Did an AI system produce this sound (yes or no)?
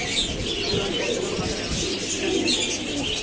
no